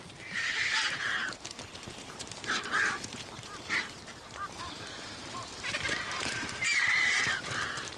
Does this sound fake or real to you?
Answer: fake